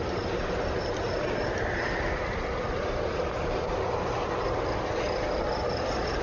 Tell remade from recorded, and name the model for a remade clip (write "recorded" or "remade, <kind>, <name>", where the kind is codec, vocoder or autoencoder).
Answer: recorded